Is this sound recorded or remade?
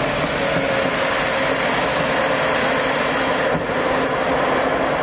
recorded